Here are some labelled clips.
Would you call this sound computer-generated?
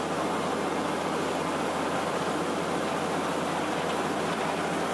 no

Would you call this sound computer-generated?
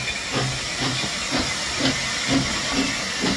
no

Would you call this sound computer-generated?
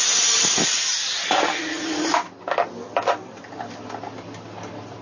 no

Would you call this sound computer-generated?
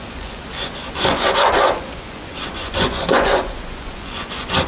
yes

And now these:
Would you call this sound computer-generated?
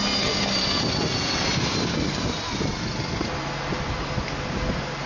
no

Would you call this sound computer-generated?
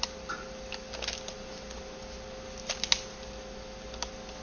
no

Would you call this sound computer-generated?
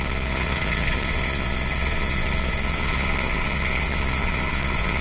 yes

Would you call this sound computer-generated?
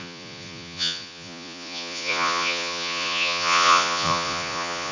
yes